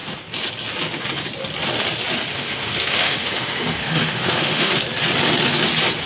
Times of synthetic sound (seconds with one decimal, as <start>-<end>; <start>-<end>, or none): 2.3-4.7